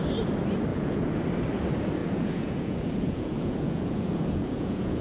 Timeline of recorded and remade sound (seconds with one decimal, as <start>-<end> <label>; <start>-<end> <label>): 0.0-0.7 recorded; 0.7-1.2 remade; 1.2-2.0 recorded; 2.0-5.0 remade